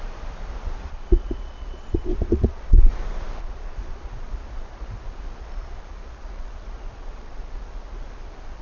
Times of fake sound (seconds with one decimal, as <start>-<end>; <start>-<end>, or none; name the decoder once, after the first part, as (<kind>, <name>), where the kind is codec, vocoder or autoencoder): 0.9-2.9 (vocoder, Vocos); 3.4-8.6